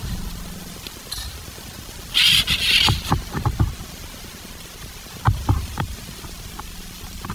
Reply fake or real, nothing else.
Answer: real